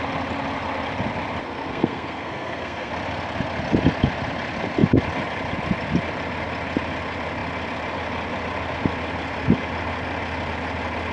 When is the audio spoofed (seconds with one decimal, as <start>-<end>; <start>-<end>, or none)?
1.4-2.9